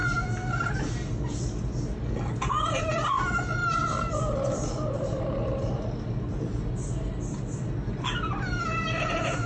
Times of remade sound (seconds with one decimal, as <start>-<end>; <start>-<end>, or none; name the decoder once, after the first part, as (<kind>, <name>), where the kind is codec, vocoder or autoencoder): 3.6-6.2 (vocoder, BigVGAN v2)